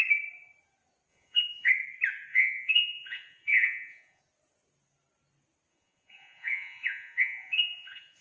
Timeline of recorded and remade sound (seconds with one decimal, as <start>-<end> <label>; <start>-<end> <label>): 0.0-1.1 recorded; 1.1-1.7 remade; 1.7-2.3 recorded; 2.3-4.2 remade; 4.2-5.7 recorded; 5.7-8.2 remade